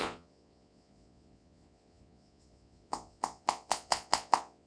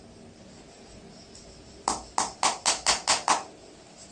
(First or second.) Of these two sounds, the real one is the second